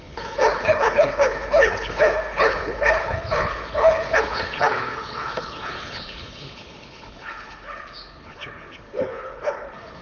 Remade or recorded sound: remade